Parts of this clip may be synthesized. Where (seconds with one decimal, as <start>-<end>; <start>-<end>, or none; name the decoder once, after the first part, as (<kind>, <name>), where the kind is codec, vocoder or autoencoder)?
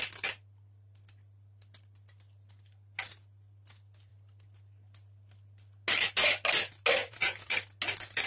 7.0-7.5 (vocoder, Vocos)